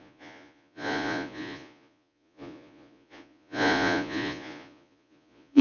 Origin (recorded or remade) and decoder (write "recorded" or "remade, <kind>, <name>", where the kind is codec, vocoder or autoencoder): remade, vocoder, Vocos